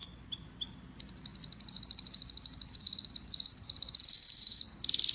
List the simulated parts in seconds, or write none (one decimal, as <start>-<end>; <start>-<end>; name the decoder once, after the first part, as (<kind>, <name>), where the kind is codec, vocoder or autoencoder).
4.1-4.6 (autoencoder, DAC-VAE)